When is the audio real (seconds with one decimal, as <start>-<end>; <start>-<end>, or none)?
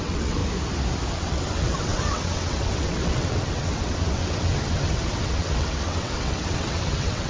0.4-1.1